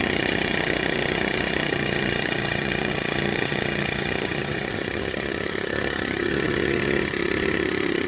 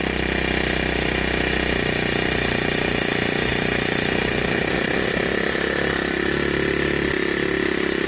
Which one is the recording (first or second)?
second